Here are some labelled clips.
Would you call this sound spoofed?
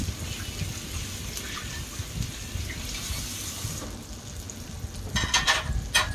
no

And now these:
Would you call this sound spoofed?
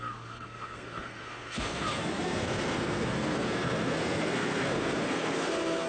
yes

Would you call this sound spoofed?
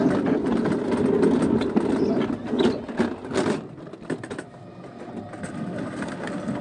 no